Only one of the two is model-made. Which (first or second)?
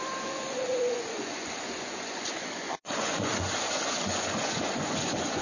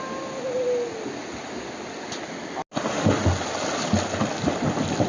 first